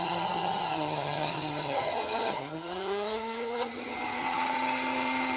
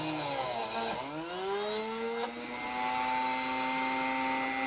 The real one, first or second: second